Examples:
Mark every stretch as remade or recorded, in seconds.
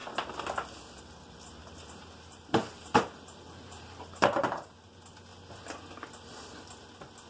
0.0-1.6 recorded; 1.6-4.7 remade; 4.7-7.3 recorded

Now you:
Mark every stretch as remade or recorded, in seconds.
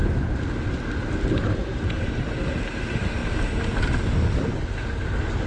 0.0-5.5 recorded